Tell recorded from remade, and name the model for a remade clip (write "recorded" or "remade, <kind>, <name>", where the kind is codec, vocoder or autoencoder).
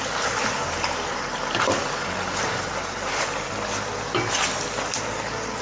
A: recorded